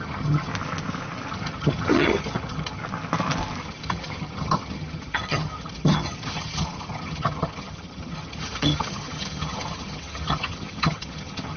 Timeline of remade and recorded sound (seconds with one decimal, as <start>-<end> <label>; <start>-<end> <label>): 0.0-0.5 remade; 0.5-1.3 recorded; 1.3-2.8 remade; 2.8-3.6 recorded; 3.6-11.6 remade